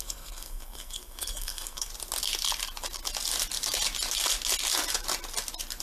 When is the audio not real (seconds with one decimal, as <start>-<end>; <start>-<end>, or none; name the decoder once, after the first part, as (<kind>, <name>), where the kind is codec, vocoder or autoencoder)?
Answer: 0.0-1.9 (codec, SNAC)